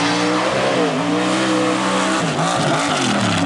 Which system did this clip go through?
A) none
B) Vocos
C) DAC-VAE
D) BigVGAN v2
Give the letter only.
A